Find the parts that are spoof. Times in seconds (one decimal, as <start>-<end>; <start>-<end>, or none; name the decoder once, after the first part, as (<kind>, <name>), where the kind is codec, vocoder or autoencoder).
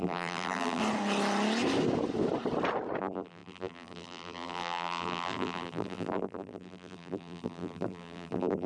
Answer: 0.0-0.8 (vocoder, BigVGAN v2); 3.0-8.7